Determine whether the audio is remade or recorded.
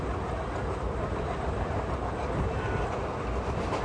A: recorded